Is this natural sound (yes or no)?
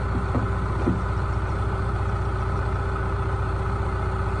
no